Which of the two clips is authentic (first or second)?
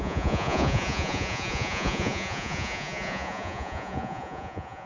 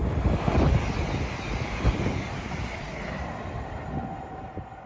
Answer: second